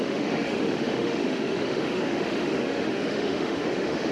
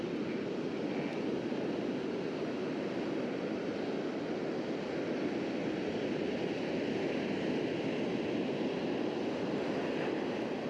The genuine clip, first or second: second